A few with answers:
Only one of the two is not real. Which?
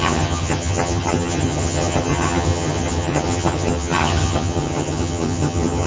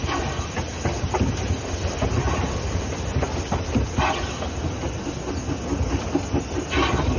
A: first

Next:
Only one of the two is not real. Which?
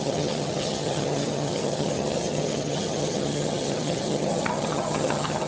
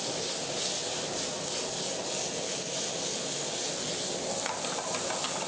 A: first